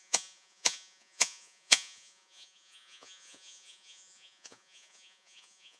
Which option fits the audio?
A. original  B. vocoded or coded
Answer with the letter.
B